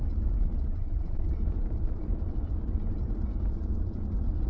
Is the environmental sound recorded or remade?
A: remade